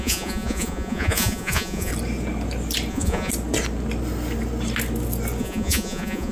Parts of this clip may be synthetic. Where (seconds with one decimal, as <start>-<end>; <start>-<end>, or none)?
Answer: 0.0-1.9; 2.9-3.3; 5.4-6.3